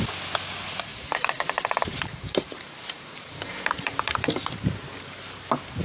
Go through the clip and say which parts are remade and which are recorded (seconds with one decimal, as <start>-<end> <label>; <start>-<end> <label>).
0.0-0.9 recorded; 0.9-4.4 remade; 4.4-5.8 recorded

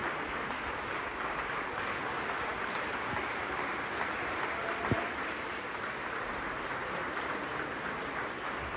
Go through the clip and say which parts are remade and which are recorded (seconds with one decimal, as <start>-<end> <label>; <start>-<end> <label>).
0.0-0.7 remade; 0.7-2.5 recorded; 2.5-6.5 remade; 6.5-8.8 recorded

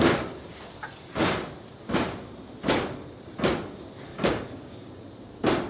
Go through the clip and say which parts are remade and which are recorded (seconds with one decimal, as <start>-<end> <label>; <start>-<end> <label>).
0.0-4.1 recorded; 4.1-5.0 remade; 5.0-5.7 recorded

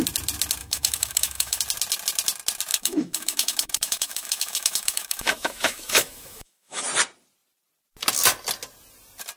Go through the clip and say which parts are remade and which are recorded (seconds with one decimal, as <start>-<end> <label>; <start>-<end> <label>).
0.0-0.6 recorded; 0.6-1.6 remade; 1.6-2.7 recorded; 2.7-6.8 remade; 6.8-9.4 recorded

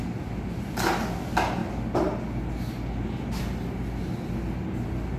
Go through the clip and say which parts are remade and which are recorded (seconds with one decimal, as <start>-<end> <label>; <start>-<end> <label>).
0.0-5.2 recorded